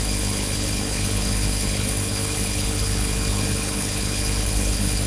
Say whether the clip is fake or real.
fake